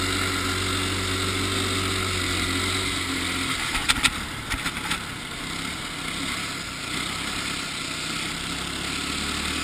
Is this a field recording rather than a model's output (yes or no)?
yes